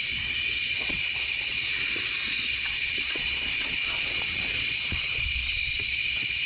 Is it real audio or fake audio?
fake